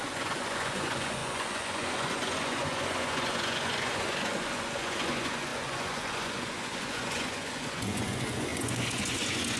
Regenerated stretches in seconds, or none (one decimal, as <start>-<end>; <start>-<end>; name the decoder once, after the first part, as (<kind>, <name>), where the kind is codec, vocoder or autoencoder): 0.0-9.6 (vocoder, Vocos)